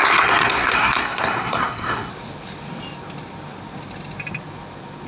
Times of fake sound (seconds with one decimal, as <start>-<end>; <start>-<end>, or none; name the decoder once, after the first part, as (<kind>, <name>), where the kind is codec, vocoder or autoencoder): 0.0-2.1 (codec, SNAC)